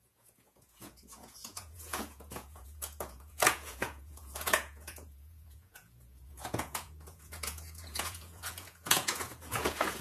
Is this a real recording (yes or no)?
no